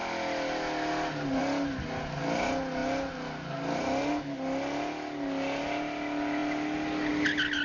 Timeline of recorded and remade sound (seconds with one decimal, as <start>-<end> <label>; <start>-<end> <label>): 0.0-7.6 recorded